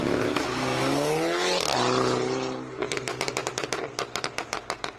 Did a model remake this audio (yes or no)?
no